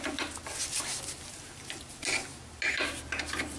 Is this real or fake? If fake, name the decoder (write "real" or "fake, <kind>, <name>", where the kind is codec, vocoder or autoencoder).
real